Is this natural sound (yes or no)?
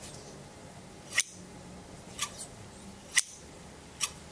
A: yes